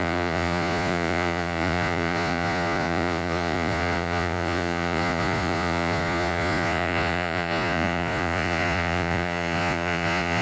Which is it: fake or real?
fake